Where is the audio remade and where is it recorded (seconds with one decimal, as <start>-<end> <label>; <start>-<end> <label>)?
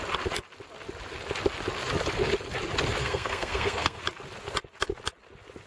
0.0-3.0 recorded; 3.0-4.0 remade; 4.0-5.7 recorded